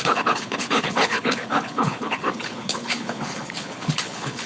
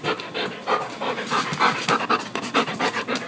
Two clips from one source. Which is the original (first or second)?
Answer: second